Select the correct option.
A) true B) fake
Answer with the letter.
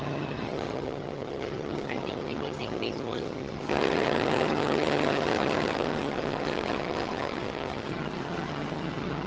B